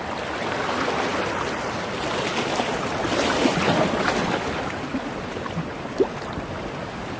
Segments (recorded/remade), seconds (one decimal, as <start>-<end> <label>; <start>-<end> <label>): 0.0-7.2 recorded

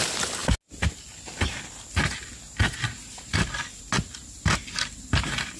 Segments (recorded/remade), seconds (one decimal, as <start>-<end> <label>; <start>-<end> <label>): 0.0-5.6 recorded

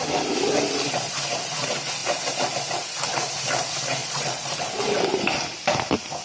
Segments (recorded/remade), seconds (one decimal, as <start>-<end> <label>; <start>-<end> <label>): 0.0-4.0 recorded; 4.0-4.7 remade; 4.7-6.2 recorded